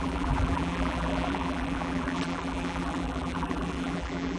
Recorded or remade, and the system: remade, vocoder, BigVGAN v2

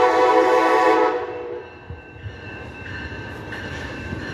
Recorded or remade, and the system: remade, vocoder, BigVGAN v2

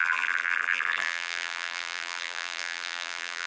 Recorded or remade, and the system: remade, vocoder, BigVGAN v2